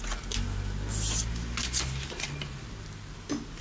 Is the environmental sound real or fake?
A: real